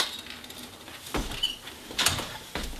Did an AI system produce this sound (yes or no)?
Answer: yes